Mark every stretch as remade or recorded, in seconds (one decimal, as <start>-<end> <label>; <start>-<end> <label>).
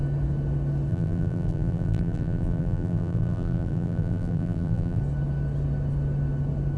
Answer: 0.0-0.9 recorded; 0.9-5.0 remade; 5.0-6.8 recorded